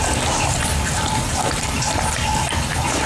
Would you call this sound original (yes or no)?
yes